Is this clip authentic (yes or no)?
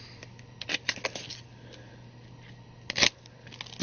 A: yes